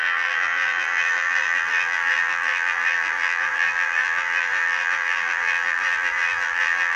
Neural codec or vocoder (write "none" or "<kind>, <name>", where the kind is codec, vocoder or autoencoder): vocoder, BigVGAN v2